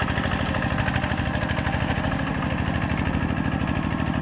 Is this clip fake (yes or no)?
no